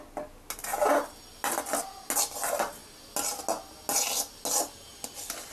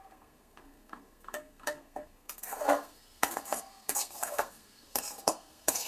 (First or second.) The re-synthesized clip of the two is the second